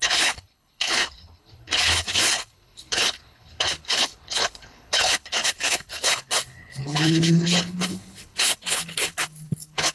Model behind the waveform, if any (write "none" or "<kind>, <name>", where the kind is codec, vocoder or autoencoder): codec, HILCodec